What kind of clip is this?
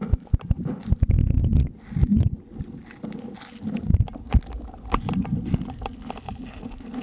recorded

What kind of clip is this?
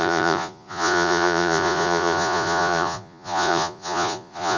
remade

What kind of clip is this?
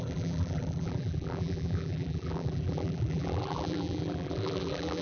remade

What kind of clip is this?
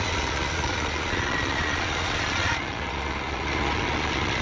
remade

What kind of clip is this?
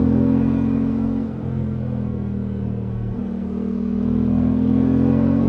remade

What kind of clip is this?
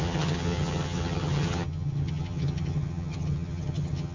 remade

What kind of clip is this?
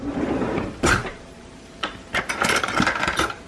remade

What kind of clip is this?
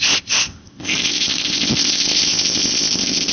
remade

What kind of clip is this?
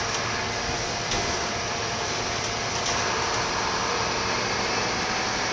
recorded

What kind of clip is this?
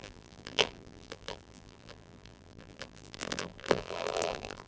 remade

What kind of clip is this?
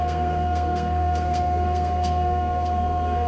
remade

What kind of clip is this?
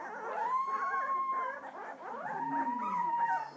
recorded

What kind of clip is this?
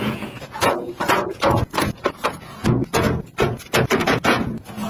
remade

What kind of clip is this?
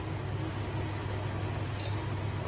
recorded